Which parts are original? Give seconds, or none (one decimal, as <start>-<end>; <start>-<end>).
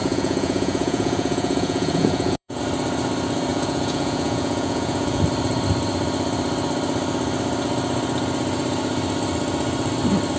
2.6-3.5; 5.2-10.4